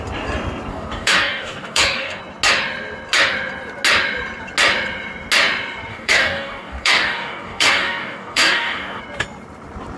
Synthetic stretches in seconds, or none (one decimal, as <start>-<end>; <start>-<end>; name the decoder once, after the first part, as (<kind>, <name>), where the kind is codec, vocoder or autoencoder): 0.7-2.2 (codec, DAC); 5.9-9.0